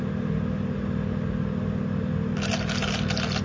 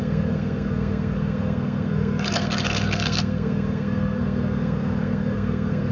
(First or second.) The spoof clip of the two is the second